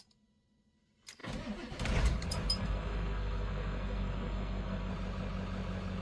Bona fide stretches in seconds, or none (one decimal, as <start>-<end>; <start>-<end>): 0.0-2.6; 4.9-6.0